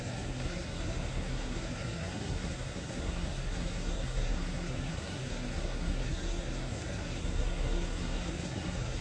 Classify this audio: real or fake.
fake